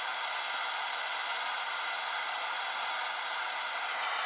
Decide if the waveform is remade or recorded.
recorded